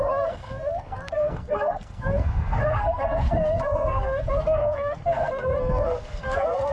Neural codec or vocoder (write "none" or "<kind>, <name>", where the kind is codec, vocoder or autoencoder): codec, SNAC